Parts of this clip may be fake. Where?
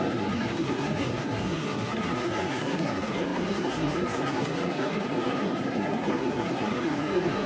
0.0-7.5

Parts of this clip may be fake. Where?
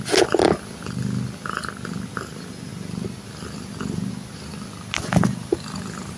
none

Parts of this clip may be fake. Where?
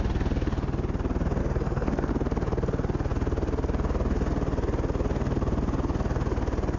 1.4-2.1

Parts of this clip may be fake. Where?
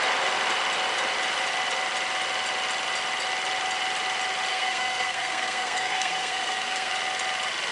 4.5-6.9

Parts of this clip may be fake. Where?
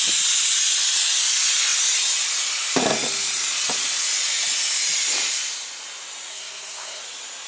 6.3-7.0